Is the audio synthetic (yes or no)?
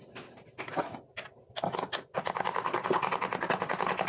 no